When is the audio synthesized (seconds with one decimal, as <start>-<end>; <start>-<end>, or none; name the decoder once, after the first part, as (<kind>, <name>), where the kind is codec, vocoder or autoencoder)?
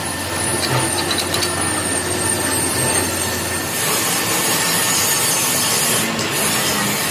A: none